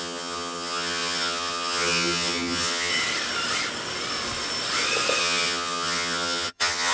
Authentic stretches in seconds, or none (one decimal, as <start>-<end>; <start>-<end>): 2.9-5.2